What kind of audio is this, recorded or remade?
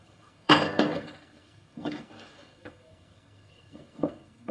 remade